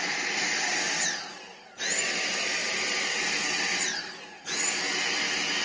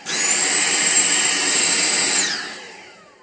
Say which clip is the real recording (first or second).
first